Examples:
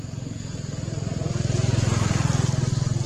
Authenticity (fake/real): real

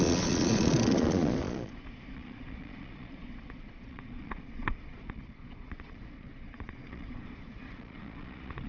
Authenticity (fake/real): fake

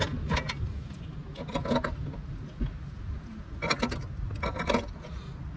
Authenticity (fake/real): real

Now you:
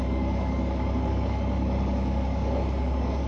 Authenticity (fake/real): fake